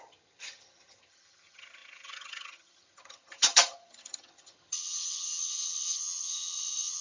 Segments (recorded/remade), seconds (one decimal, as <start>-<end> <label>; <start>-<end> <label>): 0.0-7.0 remade